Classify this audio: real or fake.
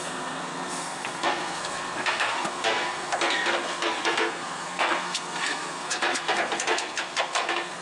fake